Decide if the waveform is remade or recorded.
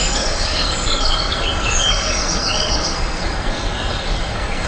remade